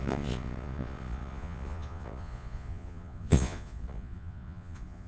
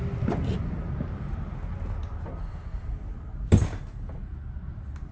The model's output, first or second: first